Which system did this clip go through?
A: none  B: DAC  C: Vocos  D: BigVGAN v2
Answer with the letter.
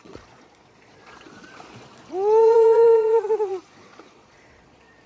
C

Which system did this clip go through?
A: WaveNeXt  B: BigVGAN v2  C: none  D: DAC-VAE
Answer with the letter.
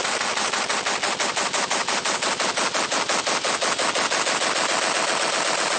C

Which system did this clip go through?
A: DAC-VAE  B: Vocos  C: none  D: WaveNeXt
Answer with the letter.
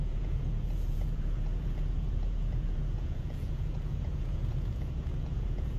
B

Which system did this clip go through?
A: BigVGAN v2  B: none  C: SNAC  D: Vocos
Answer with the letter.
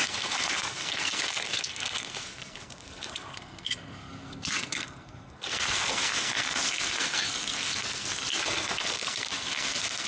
C